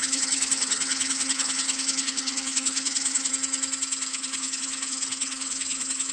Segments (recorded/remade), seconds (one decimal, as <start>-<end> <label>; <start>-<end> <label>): 0.0-3.3 remade; 3.3-4.1 recorded; 4.1-6.1 remade